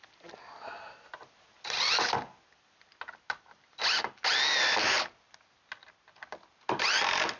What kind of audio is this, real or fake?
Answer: real